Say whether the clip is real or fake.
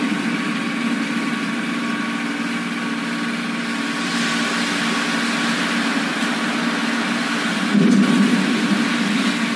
real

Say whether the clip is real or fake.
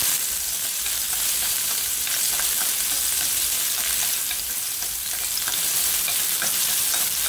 fake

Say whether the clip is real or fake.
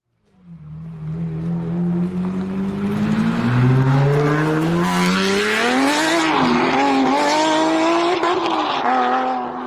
real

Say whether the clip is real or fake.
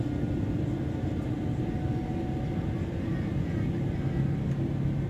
real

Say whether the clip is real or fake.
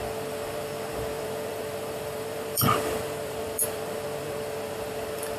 fake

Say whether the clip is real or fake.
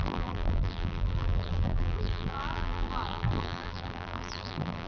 fake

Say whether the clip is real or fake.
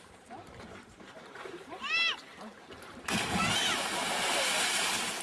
fake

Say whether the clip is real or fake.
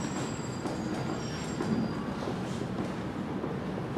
real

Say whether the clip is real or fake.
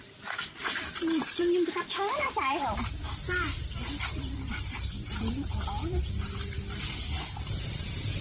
fake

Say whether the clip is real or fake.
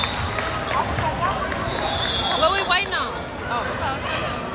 real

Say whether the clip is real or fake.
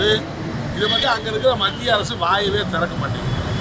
real